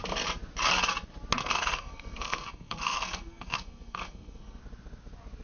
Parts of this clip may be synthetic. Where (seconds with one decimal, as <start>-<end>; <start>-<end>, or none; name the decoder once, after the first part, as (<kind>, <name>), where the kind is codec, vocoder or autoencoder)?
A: 1.4-4.6 (codec, SNAC)